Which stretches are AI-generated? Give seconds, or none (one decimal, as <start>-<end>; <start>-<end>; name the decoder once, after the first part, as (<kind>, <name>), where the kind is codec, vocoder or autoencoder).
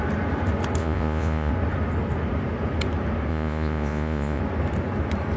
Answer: 0.8-1.5 (vocoder, Vocos); 3.3-4.4